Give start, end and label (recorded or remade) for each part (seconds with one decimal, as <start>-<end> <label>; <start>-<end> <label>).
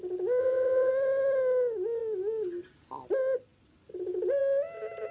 0.0-0.4 recorded; 0.4-0.9 remade; 0.9-5.1 recorded